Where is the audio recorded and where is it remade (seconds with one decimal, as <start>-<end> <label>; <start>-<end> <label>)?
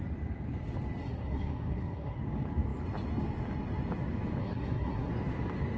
0.0-1.0 recorded; 1.0-2.2 remade; 2.2-4.4 recorded; 4.4-5.1 remade; 5.1-5.8 recorded